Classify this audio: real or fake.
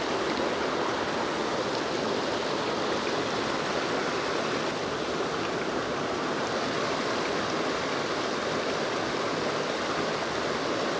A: real